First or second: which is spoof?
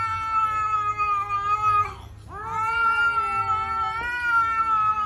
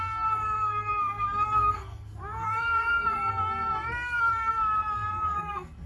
second